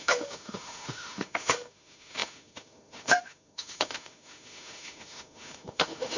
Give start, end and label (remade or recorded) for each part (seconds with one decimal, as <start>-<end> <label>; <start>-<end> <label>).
0.0-6.2 remade

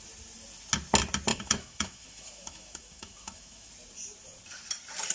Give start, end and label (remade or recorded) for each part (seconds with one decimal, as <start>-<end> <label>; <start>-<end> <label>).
0.0-1.3 recorded; 1.3-3.7 remade; 3.7-5.1 recorded

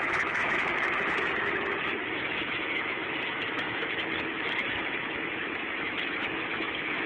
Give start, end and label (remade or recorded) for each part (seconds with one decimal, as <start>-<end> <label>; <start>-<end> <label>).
0.0-7.1 remade

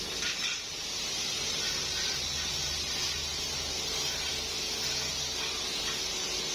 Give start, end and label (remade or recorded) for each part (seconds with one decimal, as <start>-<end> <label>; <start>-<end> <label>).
0.0-6.5 recorded